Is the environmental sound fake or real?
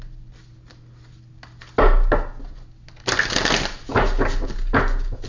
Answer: real